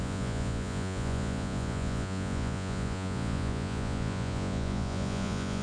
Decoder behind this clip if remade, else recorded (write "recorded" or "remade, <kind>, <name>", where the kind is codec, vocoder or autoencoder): remade, vocoder, Vocos